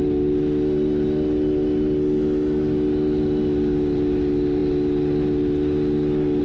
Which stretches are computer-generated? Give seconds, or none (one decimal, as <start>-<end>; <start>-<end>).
none